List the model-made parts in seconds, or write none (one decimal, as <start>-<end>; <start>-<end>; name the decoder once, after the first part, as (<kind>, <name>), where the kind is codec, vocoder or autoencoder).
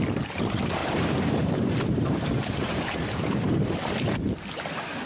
0.8-3.9 (vocoder, BigVGAN v2)